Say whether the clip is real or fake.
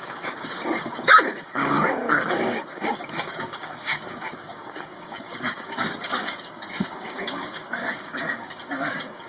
fake